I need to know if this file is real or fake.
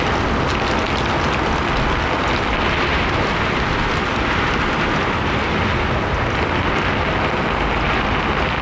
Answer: real